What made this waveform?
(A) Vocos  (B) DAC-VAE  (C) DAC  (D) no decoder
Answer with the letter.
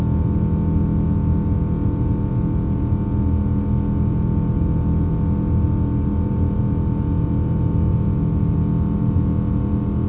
D